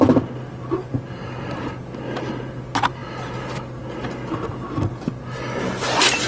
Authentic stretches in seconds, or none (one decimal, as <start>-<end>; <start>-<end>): 0.0-6.3